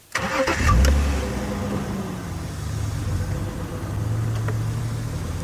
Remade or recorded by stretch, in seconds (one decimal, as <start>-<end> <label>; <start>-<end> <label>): 0.0-5.4 recorded